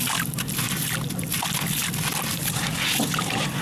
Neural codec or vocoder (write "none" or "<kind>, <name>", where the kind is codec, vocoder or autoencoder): none